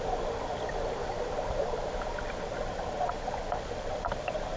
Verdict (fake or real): real